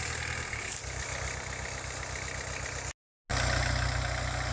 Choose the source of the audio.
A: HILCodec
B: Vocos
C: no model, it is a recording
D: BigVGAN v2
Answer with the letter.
C